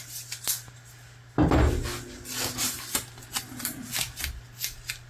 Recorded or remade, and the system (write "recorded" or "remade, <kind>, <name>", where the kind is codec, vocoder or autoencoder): recorded